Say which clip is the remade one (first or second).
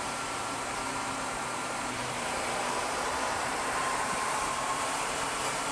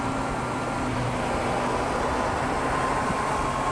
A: first